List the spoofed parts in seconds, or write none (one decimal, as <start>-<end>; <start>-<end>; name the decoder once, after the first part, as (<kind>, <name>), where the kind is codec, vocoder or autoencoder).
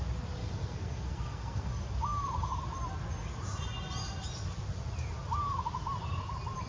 0.4-1.7 (codec, SNAC)